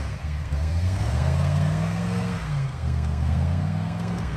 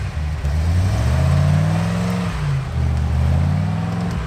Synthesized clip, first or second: first